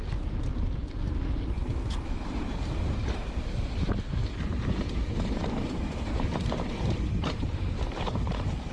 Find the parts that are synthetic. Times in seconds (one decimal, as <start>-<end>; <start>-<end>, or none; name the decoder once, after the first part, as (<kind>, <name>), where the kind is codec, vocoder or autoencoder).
0.0-0.5 (vocoder, BigVGAN v2); 1.1-8.7